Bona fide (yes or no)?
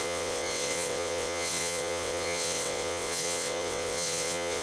no